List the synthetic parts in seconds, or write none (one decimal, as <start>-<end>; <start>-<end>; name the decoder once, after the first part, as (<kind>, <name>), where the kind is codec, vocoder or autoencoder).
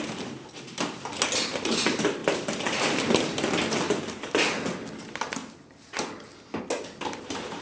none